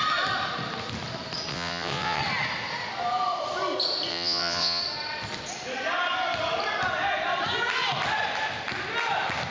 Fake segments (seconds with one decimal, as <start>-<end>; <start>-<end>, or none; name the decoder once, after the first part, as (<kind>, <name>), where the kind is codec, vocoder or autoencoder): 1.5-2.2 (vocoder, WaveNeXt); 4.1-4.8

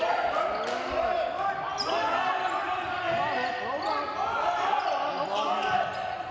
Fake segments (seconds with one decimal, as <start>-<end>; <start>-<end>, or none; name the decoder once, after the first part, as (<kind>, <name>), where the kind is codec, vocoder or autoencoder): none

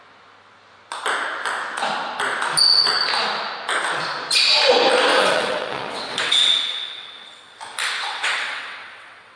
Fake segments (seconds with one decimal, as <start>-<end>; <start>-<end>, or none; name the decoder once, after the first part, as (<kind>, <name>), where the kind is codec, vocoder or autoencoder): 5.1-7.6 (vocoder, WaveNeXt); 8.0-9.4

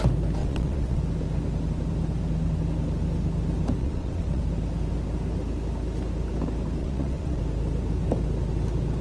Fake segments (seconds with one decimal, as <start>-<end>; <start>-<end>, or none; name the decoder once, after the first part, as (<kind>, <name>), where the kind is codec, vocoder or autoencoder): 0.4-1.0 (vocoder, WaveNeXt); 3.8-4.4; 6.8-7.4